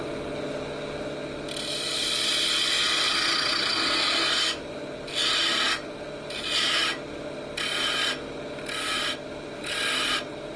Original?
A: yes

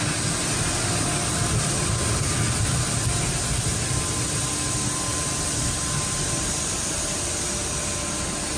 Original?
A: yes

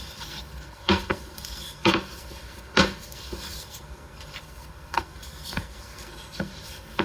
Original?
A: no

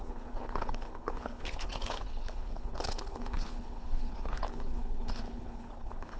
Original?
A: no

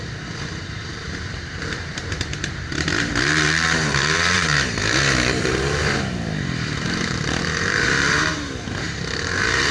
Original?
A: no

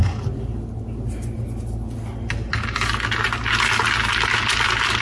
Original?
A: yes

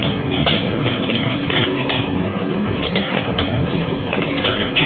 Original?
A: no